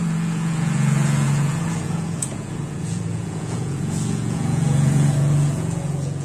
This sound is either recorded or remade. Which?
remade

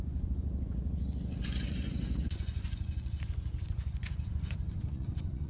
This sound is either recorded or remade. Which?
remade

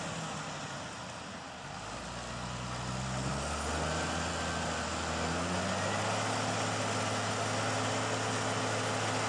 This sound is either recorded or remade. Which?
recorded